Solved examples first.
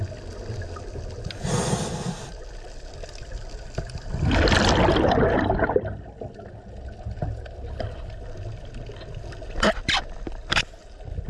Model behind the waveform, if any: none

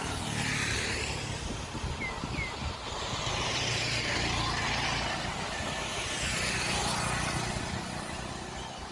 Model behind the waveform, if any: none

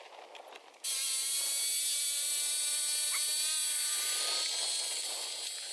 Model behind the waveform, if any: none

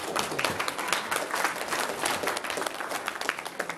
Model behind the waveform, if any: none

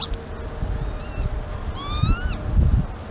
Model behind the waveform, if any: none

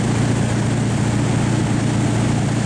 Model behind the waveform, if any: none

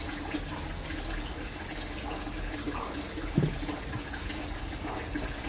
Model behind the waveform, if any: none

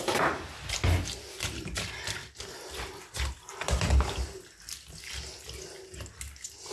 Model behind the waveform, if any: none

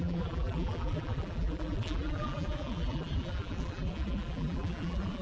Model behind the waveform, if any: vocoder, BigVGAN v2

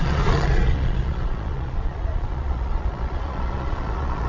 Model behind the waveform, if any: vocoder, Vocos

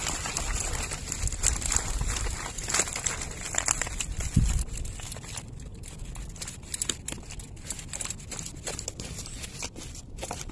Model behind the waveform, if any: none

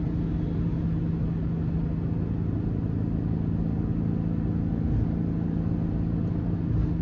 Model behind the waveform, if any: none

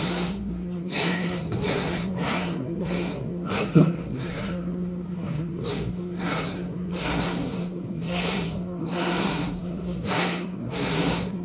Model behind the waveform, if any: codec, SNAC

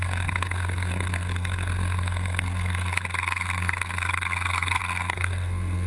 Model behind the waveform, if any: codec, SNAC